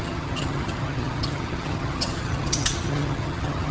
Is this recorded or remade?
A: remade